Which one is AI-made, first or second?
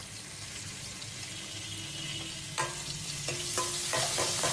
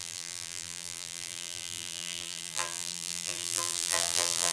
second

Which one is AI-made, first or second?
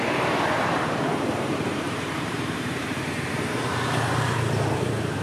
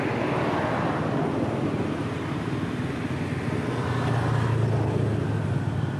first